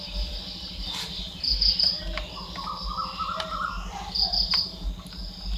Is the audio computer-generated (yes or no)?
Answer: no